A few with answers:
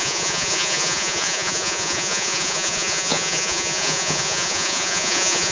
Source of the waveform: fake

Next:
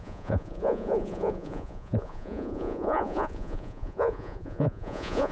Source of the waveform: fake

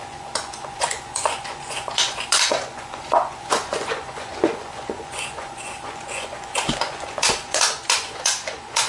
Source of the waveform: fake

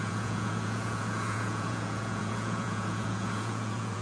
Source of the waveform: fake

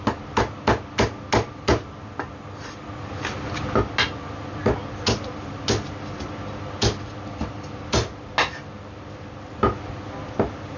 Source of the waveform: real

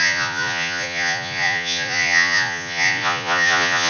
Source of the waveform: fake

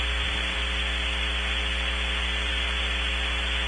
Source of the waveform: real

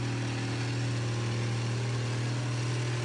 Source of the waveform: real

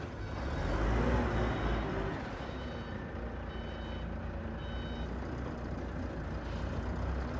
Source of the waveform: real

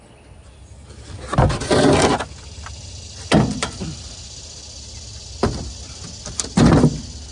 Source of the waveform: real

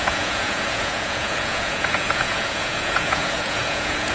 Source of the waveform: fake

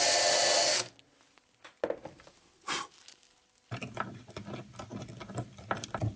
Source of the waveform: real